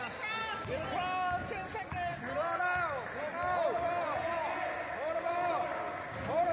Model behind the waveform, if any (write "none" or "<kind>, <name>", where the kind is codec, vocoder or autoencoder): none